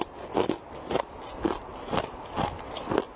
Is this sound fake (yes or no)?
no